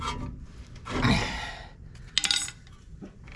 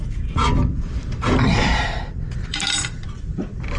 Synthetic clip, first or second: second